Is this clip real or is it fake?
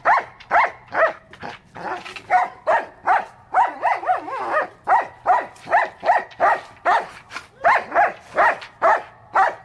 real